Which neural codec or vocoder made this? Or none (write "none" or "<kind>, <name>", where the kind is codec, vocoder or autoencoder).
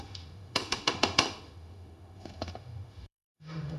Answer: autoencoder, DAC-VAE